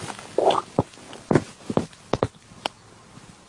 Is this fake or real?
real